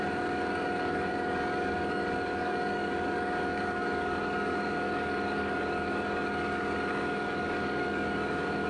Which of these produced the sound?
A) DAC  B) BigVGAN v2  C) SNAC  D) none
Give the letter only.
A